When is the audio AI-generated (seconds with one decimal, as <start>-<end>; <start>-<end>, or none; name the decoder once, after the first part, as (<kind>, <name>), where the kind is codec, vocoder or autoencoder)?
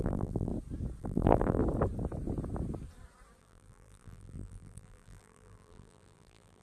0.0-0.5 (vocoder, BigVGAN v2); 1.0-1.6; 3.4-6.6